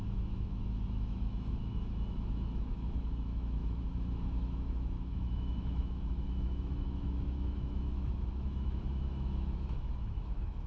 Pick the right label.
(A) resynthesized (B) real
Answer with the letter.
A